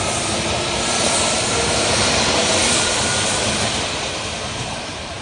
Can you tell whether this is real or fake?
real